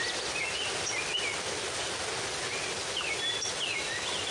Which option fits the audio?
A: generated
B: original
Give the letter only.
B